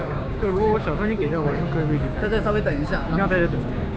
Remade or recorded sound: remade